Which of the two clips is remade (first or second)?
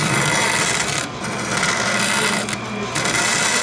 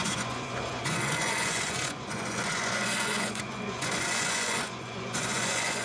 second